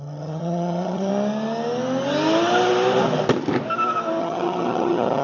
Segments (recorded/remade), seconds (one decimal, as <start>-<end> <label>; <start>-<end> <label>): 0.0-1.1 remade; 1.1-4.2 recorded; 4.2-5.2 remade

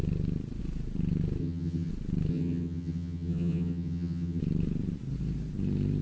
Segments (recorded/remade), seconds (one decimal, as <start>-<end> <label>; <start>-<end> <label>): 0.0-1.4 recorded; 1.4-1.9 remade; 1.9-2.3 recorded; 2.3-4.4 remade; 4.4-6.0 recorded